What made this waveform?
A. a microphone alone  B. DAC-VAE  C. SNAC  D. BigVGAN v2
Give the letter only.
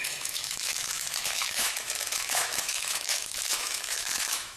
B